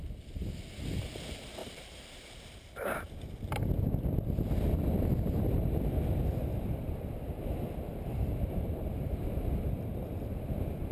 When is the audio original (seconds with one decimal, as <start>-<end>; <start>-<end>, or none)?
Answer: 0.0-1.6; 3.1-7.9; 9.4-10.9